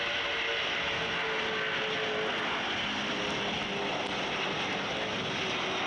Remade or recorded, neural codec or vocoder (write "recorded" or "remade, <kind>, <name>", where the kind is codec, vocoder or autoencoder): recorded